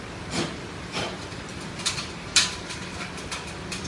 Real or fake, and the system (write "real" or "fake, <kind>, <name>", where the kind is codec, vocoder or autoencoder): fake, vocoder, BigVGAN v2